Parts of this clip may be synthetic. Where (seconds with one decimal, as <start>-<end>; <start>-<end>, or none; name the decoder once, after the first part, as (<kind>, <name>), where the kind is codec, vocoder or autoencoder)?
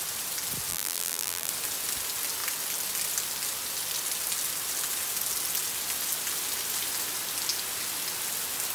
0.7-1.5 (vocoder, BigVGAN v2)